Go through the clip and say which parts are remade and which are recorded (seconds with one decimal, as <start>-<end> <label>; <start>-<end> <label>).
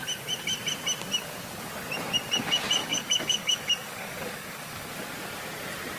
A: 0.0-2.8 recorded; 2.8-4.9 remade; 4.9-6.0 recorded